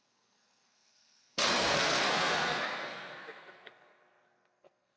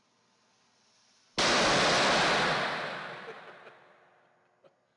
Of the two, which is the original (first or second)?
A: second